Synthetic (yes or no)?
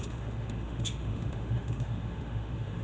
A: yes